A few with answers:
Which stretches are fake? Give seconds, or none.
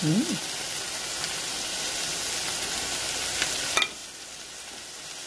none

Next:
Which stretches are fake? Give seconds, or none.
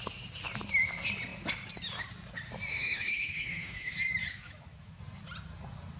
2.7-3.9 (autoencoder, DAC-VAE); 4.3-5.0